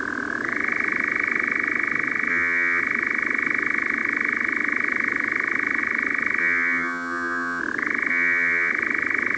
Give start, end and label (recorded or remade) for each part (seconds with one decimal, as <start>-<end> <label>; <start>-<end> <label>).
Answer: 0.0-2.3 recorded; 2.3-2.8 remade; 2.8-6.4 recorded; 6.4-7.6 remade; 7.6-8.1 recorded; 8.1-8.7 remade; 8.7-9.4 recorded